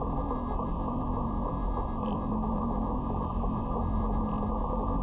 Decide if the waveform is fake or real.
real